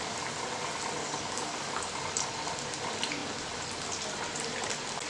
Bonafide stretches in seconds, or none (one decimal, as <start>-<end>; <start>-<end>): 0.0-1.0; 1.8-5.1